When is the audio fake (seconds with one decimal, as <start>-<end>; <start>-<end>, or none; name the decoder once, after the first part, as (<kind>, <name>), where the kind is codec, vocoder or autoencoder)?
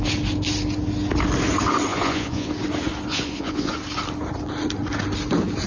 1.9-2.5 (vocoder, Vocos); 3.1-3.7